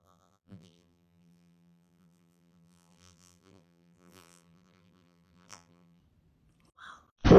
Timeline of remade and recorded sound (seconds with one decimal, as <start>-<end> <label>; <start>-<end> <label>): 0.0-6.0 remade; 6.0-7.4 recorded